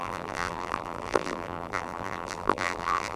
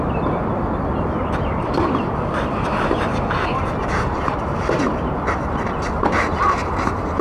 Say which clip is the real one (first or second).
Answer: second